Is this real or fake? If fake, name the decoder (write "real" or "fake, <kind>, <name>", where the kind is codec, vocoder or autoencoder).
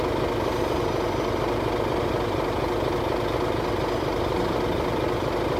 real